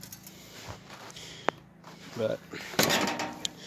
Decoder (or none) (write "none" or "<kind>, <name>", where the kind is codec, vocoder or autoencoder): none